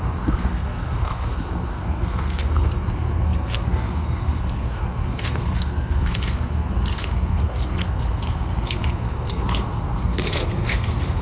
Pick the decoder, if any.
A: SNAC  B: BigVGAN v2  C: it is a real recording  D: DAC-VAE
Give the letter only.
A